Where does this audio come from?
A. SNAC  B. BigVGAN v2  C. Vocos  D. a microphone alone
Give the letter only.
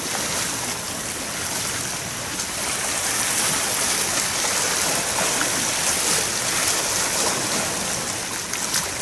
D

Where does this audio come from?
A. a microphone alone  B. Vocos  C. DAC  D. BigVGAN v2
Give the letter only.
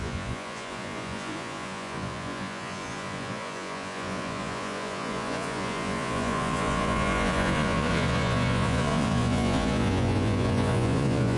B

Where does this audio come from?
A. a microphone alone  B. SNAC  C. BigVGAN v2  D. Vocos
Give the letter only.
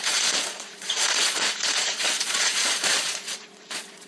D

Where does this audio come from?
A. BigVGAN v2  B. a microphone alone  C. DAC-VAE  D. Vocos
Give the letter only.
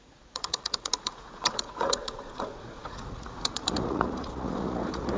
D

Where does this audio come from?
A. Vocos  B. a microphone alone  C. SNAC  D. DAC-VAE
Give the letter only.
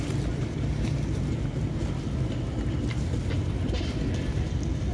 B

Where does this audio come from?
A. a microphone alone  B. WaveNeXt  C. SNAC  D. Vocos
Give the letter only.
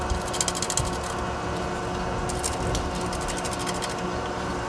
A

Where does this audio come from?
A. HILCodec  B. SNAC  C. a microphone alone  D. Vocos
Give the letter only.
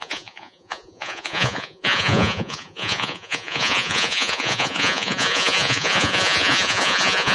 D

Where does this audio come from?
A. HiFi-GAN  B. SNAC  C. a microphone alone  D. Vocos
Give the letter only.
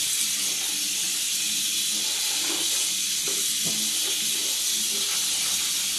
C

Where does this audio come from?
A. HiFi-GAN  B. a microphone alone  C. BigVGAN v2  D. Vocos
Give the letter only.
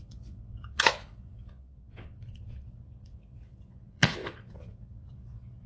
D